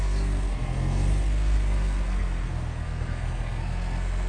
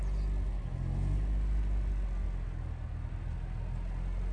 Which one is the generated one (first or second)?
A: first